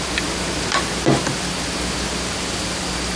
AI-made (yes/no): no